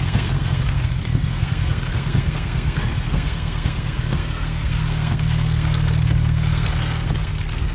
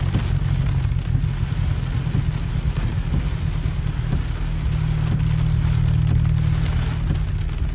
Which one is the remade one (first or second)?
first